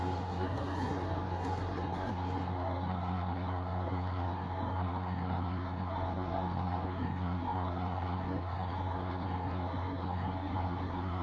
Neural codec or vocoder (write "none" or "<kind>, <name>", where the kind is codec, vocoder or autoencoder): codec, SNAC